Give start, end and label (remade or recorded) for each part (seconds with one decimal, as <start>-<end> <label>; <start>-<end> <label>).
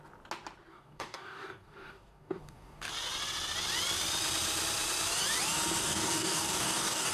0.0-0.7 recorded; 0.7-2.9 remade; 2.9-5.8 recorded; 5.8-7.1 remade